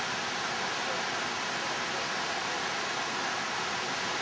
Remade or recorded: recorded